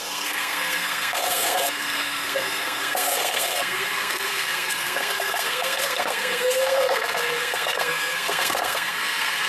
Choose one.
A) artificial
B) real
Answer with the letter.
A